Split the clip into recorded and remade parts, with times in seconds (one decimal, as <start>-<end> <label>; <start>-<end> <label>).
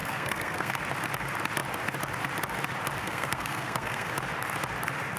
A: 0.0-0.8 remade; 0.8-3.0 recorded; 3.0-4.1 remade; 4.1-5.2 recorded